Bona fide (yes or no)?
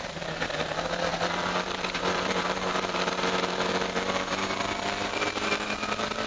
no